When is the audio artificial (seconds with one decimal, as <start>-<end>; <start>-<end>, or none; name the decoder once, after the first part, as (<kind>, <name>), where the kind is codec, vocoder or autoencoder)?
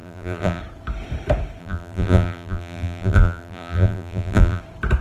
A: 0.0-0.6 (vocoder, BigVGAN v2); 1.6-4.6